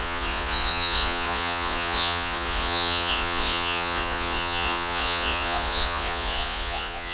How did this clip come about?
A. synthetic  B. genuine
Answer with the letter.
A